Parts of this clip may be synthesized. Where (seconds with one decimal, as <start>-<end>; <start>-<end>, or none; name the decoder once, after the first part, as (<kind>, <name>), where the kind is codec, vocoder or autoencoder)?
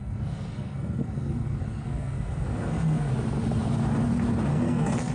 0.0-3.1 (codec, SNAC); 4.5-5.1